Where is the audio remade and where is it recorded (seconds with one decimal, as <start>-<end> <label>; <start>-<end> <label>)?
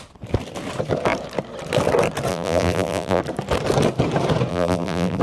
0.0-2.3 recorded; 2.3-3.2 remade; 3.2-4.5 recorded; 4.5-5.2 remade